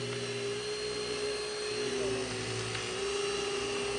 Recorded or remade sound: recorded